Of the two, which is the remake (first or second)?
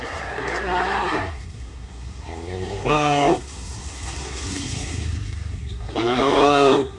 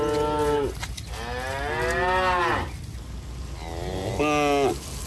first